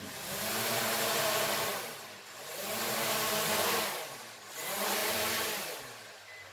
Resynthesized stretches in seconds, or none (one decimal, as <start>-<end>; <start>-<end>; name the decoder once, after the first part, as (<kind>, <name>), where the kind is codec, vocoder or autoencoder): 1.7-2.4 (vocoder, BigVGAN v2); 5.0-5.8